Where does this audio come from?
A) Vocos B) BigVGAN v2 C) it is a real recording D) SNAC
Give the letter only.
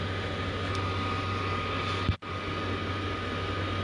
C